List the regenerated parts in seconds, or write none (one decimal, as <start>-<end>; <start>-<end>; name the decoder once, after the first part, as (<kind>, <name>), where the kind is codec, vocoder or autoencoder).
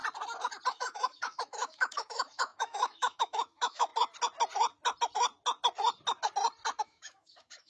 0.7-3.9 (autoencoder, DAC-VAE); 6.8-7.7